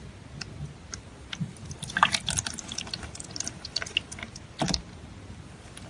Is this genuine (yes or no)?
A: yes